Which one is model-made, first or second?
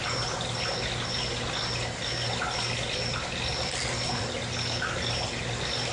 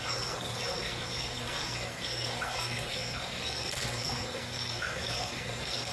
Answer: second